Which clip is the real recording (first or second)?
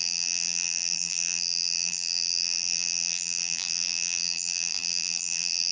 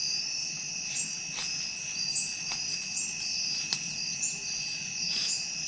second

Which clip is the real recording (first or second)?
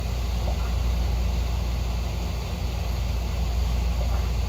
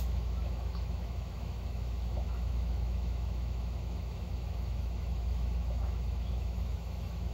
first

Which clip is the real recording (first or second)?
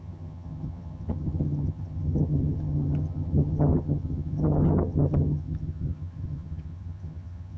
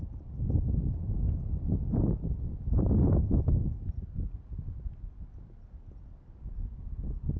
second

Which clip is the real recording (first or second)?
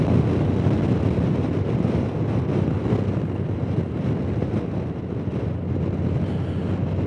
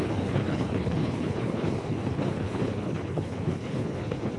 first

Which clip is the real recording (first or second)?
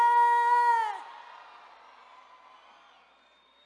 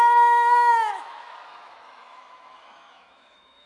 first